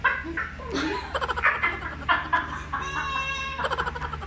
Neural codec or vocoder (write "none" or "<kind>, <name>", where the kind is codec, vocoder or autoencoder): none